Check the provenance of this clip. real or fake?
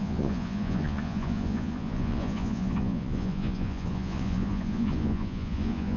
fake